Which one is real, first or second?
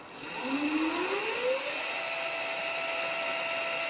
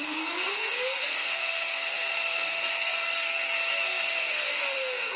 first